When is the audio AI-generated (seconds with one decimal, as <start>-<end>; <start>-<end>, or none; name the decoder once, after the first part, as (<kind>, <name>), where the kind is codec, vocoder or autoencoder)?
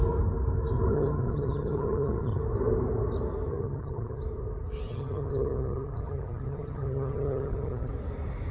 0.9-2.4 (vocoder, HiFi-GAN); 3.5-4.2; 4.9-7.9